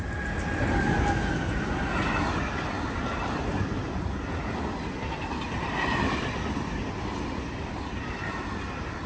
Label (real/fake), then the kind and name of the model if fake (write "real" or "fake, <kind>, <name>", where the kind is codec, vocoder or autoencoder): real